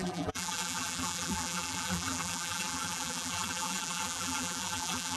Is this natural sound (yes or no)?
no